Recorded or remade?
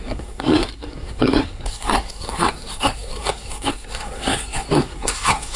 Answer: remade